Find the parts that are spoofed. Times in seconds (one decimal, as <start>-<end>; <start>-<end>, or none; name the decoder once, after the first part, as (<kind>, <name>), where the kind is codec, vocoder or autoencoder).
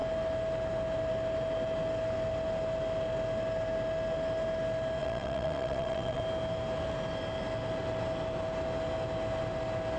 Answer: 5.0-6.2 (vocoder, WaveNeXt)